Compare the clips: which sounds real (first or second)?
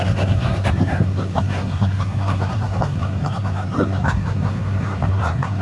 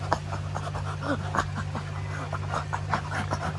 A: second